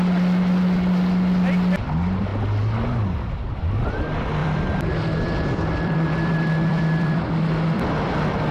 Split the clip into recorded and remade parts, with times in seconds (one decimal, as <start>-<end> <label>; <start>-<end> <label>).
0.0-4.4 recorded; 4.4-7.3 remade; 7.3-8.5 recorded